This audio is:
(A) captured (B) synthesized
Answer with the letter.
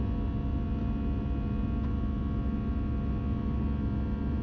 A